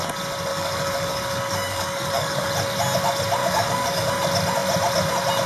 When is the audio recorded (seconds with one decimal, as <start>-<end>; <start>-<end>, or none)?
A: 0.0-0.5; 2.5-3.4; 4.1-5.5